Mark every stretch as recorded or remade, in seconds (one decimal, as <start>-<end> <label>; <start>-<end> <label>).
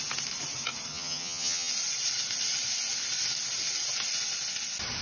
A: 0.0-0.9 recorded; 0.9-1.7 remade; 1.7-5.0 recorded